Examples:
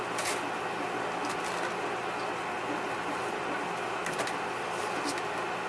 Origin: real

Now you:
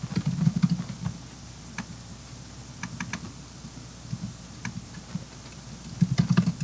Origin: real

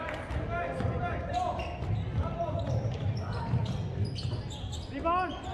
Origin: real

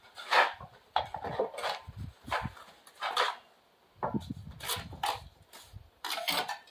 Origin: real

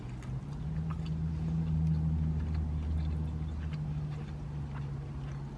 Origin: real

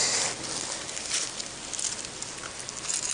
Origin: real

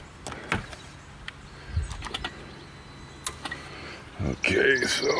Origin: real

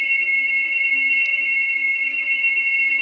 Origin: fake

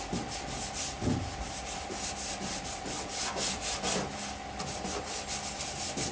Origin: real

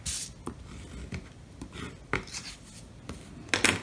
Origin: real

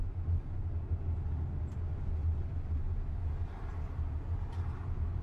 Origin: real